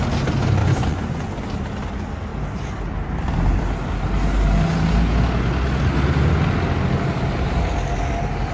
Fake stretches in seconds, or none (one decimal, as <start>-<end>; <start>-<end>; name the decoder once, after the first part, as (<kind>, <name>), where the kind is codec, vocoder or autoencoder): 0.6-1.3 (vocoder, Vocos)